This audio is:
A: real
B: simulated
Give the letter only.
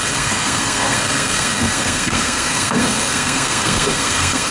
B